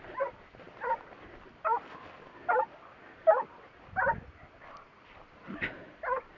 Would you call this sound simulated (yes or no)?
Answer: no